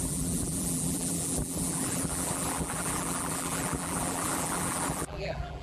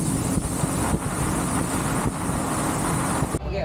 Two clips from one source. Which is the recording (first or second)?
second